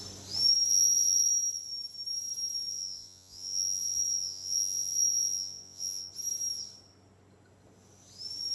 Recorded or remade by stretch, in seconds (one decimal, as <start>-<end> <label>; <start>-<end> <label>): 0.0-0.7 recorded; 0.7-1.3 remade; 1.3-2.7 recorded; 2.7-6.1 remade; 6.1-8.5 recorded